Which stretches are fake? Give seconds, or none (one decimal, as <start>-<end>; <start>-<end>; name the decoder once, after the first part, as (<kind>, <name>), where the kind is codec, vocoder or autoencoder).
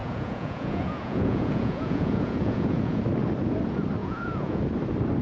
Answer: 0.0-3.0 (vocoder, Vocos); 4.0-4.6